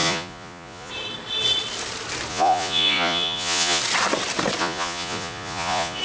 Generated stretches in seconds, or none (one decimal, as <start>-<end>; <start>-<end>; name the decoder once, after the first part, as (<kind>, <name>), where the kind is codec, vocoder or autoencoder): 0.0-0.9 (vocoder, Vocos); 2.3-3.8; 4.6-6.0